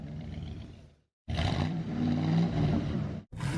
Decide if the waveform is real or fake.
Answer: fake